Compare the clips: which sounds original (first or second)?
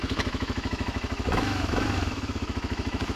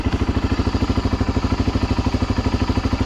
second